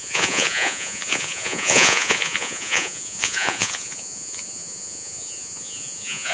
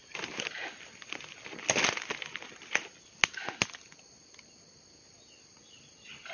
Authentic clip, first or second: second